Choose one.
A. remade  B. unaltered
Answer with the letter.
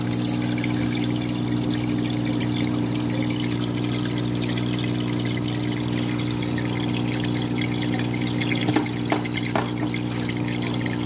B